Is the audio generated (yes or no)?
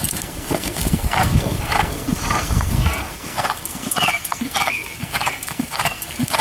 yes